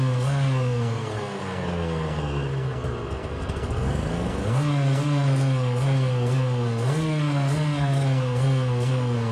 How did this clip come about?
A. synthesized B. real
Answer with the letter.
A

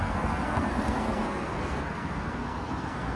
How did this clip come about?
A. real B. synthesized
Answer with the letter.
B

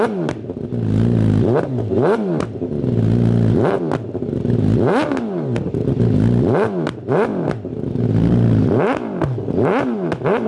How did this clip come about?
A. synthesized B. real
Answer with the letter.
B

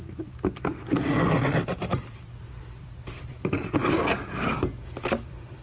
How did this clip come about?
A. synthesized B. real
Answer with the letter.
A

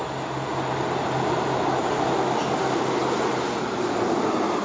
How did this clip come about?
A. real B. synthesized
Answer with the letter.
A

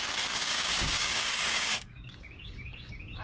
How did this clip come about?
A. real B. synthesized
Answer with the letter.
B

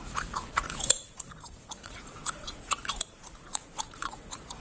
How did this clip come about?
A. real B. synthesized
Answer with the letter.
B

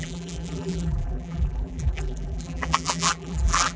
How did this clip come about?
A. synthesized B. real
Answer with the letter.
A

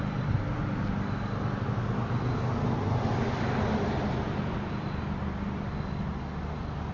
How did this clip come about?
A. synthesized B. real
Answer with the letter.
B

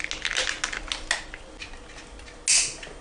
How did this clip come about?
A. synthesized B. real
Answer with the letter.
B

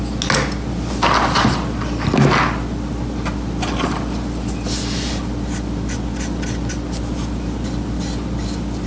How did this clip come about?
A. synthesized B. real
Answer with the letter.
B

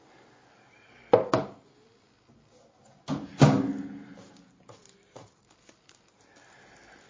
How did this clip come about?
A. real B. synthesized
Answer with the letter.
A